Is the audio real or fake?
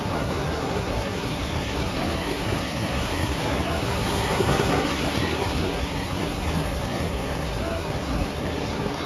fake